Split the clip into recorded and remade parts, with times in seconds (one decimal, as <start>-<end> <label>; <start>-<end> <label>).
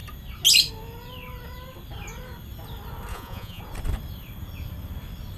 0.0-3.1 recorded; 3.1-3.6 remade; 3.6-5.4 recorded